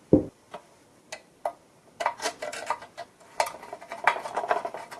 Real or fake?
real